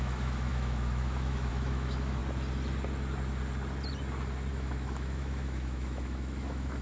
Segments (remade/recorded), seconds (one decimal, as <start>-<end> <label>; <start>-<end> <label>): 0.0-2.2 remade; 2.2-4.5 recorded; 4.5-6.8 remade